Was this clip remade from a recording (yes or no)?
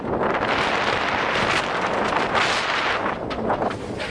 no